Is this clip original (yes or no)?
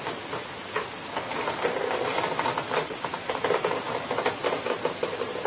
no